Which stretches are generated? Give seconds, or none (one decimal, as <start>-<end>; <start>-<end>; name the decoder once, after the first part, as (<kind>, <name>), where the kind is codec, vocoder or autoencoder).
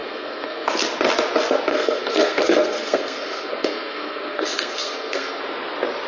0.0-0.7 (codec, SNAC); 1.7-5.4